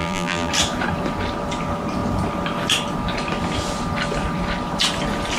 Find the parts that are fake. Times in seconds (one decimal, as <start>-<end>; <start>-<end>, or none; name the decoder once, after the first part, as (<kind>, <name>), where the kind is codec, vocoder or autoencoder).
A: 0.0-0.5 (vocoder, BigVGAN v2)